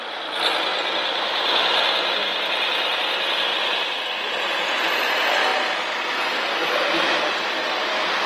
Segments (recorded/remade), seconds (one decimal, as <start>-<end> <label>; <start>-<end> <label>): 0.0-8.3 recorded